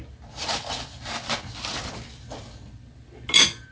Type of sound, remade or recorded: recorded